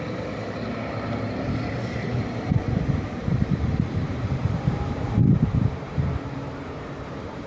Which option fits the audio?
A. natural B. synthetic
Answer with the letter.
B